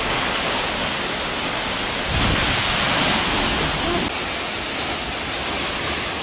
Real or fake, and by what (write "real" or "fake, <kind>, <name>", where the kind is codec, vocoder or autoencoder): real